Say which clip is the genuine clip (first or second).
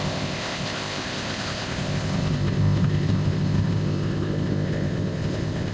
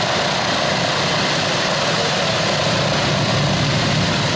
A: second